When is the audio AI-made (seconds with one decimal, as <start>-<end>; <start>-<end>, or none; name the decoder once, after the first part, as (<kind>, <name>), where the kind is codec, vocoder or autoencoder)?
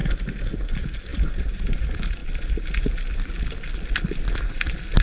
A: 0.7-2.2 (vocoder, BigVGAN v2)